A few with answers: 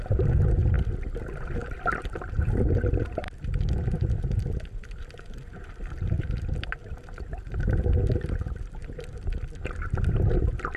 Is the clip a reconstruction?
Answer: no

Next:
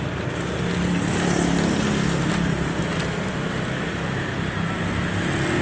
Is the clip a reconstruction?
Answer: no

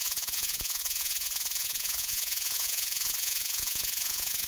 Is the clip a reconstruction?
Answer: yes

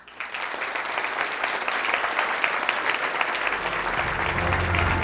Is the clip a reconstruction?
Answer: no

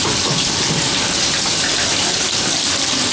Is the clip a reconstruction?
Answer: no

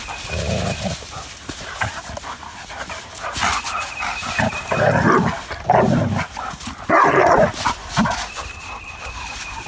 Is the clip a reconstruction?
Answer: no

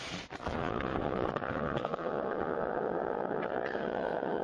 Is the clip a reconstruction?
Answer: yes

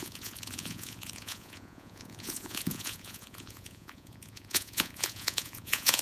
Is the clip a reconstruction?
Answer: yes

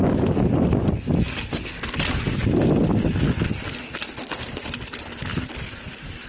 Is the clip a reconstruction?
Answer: no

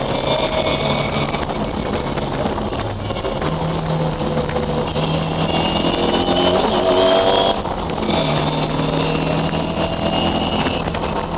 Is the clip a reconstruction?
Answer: no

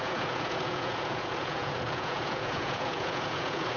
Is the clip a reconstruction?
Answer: yes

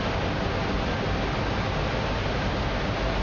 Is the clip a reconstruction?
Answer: no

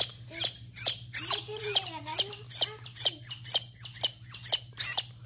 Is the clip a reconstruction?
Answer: no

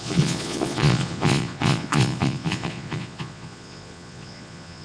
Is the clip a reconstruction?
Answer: yes